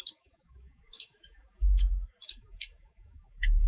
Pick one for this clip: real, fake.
fake